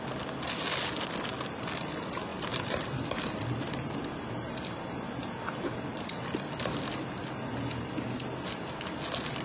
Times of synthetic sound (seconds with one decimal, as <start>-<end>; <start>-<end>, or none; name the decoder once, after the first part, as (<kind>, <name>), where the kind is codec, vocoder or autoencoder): 2.3-4.8 (vocoder, BigVGAN v2)